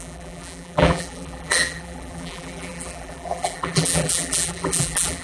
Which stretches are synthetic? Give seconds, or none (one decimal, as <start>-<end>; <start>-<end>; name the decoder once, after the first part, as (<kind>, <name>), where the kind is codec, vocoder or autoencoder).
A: 0.0-5.2 (vocoder, BigVGAN v2)